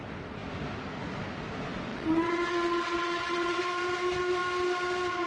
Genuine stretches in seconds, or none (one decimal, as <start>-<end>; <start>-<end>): 0.0-1.9; 3.6-5.3

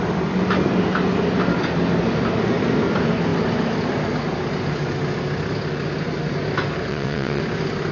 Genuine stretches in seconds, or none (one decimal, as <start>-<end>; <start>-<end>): 0.0-6.9; 7.4-7.9

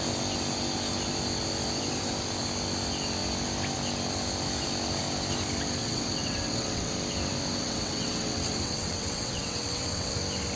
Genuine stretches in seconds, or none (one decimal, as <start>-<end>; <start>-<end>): 0.0-5.8; 6.9-7.6; 10.2-10.6

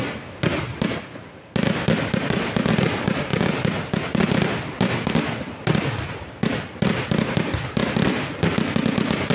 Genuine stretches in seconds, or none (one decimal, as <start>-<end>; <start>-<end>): 0.0-9.3

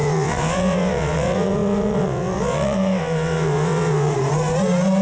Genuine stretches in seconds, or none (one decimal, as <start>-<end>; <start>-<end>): 4.1-5.0

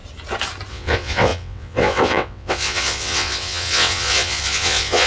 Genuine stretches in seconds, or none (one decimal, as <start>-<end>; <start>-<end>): 0.0-0.7

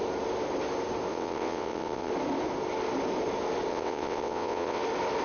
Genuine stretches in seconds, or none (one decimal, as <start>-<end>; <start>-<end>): 0.0-1.1; 2.1-3.7; 4.8-5.2